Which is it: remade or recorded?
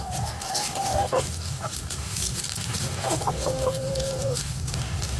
remade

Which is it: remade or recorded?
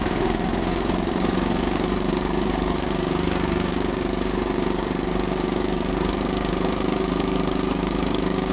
remade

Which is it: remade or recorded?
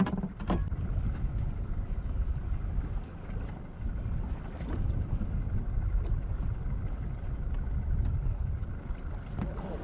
recorded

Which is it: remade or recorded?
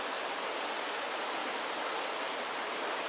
recorded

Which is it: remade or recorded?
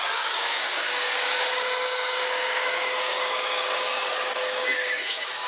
remade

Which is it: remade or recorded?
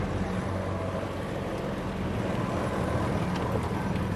recorded